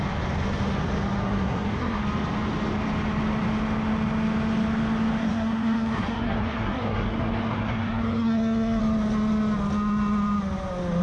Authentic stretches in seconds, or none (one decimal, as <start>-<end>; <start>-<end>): 0.0-1.2; 2.0-5.2; 8.8-11.0